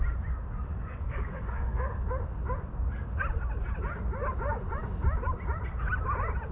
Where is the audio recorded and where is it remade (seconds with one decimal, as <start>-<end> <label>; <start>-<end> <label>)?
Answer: 0.0-0.7 recorded; 0.7-2.1 remade; 2.1-6.5 recorded